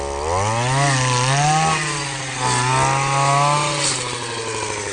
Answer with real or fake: real